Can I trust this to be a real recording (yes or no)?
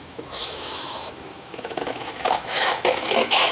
no